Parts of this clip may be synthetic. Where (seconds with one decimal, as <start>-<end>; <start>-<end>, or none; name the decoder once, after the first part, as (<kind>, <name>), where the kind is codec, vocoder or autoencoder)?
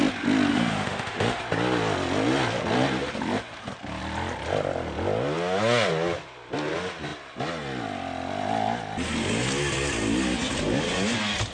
0.5-1.4 (autoencoder, DAC-VAE)